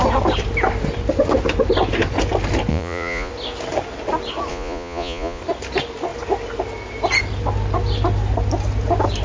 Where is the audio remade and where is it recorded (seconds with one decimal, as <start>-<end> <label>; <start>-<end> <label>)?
0.0-2.7 recorded; 2.7-3.3 remade; 3.3-4.5 recorded; 4.5-5.4 remade; 5.4-9.2 recorded